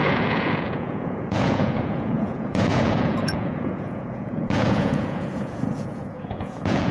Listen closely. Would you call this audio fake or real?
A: fake